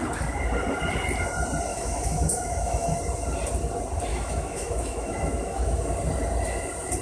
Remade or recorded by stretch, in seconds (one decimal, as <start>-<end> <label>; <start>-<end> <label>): 0.0-1.7 recorded; 1.7-3.0 remade; 3.0-4.1 recorded; 4.1-5.8 remade; 5.8-7.0 recorded